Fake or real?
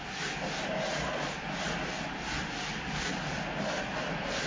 real